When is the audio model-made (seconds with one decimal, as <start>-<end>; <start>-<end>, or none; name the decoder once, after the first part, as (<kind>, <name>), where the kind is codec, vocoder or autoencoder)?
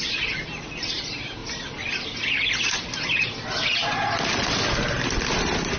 none